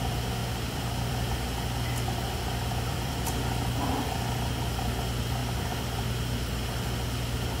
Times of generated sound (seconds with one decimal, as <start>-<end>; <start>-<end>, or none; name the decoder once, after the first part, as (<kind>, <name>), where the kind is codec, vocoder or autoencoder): 0.4-4.0 (vocoder, BigVGAN v2)